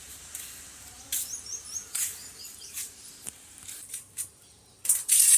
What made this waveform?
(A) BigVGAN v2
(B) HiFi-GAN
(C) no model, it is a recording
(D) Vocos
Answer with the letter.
A